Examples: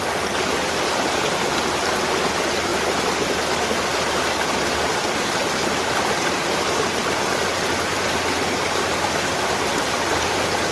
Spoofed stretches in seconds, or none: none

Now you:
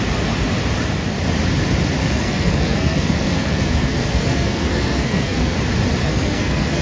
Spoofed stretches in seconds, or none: 2.0-5.6 (codec, SNAC); 6.0-6.8